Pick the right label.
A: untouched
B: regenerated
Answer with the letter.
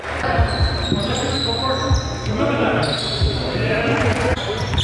A